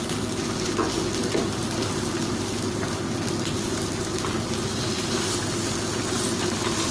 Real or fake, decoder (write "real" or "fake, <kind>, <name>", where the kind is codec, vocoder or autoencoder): real